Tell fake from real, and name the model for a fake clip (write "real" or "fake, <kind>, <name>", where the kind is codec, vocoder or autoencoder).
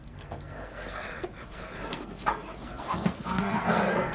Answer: fake, codec, SNAC